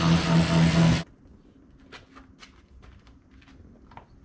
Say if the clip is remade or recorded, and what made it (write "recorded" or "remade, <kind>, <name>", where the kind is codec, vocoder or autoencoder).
recorded